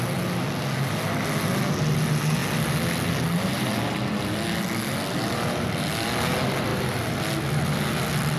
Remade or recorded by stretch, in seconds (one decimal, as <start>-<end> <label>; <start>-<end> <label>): 0.0-8.4 recorded